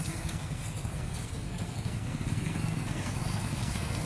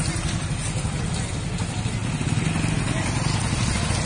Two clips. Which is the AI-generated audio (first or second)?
first